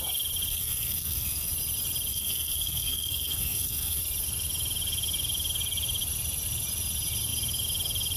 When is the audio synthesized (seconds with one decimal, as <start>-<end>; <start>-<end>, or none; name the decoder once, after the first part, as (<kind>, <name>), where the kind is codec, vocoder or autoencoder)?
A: 0.5-1.5 (codec, SNAC); 2.1-4.0